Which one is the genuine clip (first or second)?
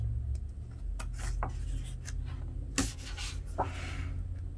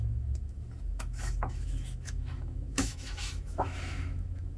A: first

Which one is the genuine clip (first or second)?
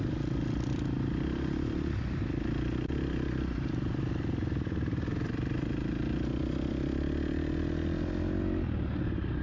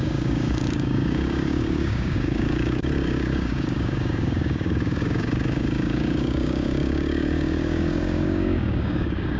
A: first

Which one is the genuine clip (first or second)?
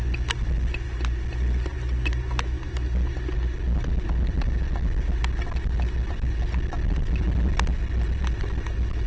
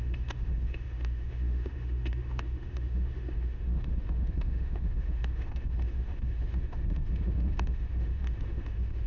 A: first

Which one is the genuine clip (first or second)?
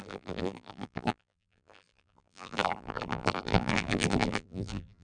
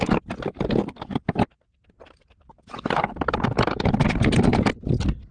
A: second